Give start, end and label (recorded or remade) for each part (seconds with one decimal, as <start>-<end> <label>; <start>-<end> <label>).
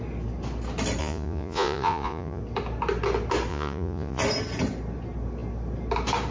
0.0-1.0 recorded; 1.0-2.4 remade; 2.4-3.5 recorded; 3.5-4.2 remade; 4.2-6.3 recorded